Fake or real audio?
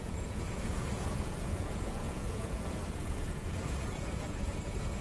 fake